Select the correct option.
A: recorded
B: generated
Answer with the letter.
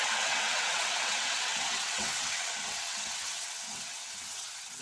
B